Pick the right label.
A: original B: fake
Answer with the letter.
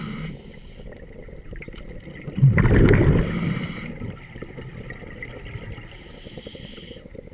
A